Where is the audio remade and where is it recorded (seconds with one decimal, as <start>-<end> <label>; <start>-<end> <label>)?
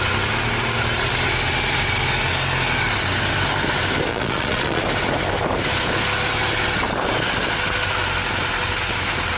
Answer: 0.0-4.1 recorded; 4.1-4.8 remade; 4.8-9.4 recorded